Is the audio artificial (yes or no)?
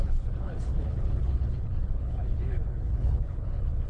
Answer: yes